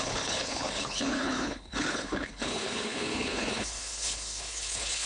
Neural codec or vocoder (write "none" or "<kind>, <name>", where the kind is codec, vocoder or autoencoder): codec, HILCodec